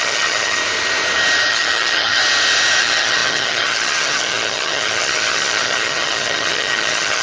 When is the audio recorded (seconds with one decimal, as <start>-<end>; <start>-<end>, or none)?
0.6-1.5; 2.2-2.8

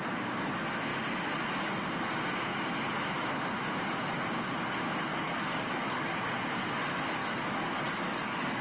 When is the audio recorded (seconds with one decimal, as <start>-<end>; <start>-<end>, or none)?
0.0-5.1; 6.1-7.2

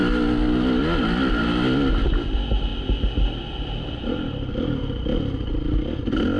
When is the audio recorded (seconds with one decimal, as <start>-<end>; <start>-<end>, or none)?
0.0-6.4

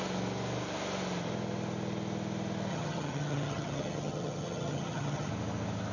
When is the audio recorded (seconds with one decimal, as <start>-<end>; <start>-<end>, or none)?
0.0-2.7; 5.3-5.9

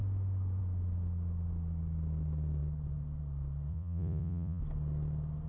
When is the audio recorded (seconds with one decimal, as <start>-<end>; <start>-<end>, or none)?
0.0-3.7; 4.6-5.5

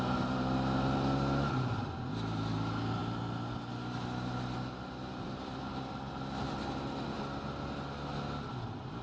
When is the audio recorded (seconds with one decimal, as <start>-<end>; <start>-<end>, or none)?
0.0-9.0

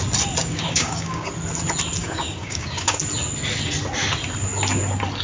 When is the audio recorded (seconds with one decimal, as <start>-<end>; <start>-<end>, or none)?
0.0-0.4; 1.3-2.0; 3.0-5.2

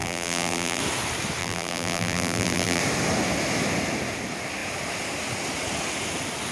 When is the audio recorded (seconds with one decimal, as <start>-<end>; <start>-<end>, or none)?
0.8-1.4; 2.8-6.5